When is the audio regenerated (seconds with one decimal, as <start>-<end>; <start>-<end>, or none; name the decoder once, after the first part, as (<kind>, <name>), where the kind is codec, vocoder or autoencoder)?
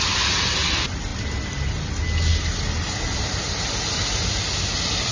none